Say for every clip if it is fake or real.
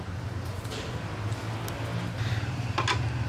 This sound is real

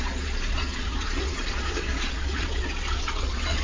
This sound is fake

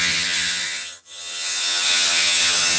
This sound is fake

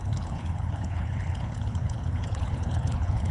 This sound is fake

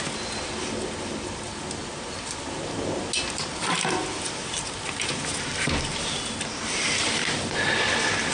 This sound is real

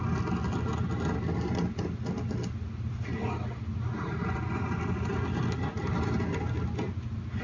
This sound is real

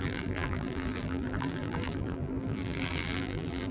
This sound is fake